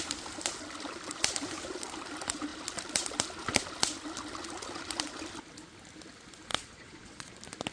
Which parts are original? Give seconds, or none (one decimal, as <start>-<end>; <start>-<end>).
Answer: 0.0-6.5; 7.3-7.7